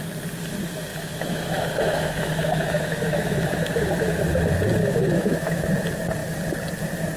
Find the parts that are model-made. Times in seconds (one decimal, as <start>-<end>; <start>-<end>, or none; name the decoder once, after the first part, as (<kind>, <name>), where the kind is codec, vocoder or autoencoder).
0.9-4.2 (autoencoder, DAC-VAE); 4.8-5.7